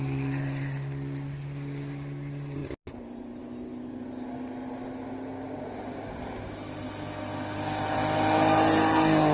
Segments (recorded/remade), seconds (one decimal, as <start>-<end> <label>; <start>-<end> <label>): 0.0-9.3 recorded

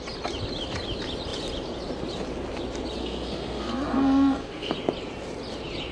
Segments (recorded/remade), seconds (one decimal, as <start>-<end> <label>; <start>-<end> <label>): 0.0-3.0 recorded; 3.0-4.7 remade; 4.7-5.9 recorded

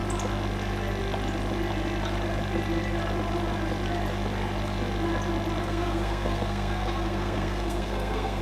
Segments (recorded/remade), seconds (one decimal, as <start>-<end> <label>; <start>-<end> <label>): 0.0-5.6 recorded; 5.6-8.4 remade